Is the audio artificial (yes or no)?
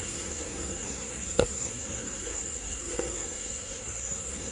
yes